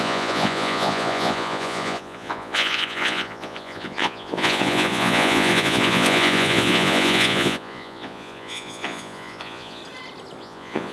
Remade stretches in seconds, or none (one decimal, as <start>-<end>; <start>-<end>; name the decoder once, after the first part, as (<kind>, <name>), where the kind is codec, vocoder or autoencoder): 0.0-9.8 (vocoder, Vocos); 10.4-10.9